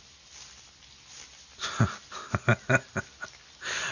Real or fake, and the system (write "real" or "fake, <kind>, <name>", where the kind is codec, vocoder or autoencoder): real